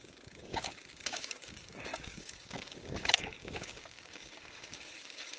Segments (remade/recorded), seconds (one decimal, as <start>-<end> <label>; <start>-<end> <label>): 0.0-5.4 remade